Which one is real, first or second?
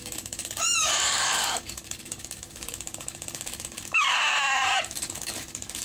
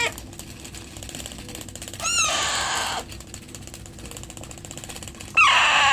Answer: second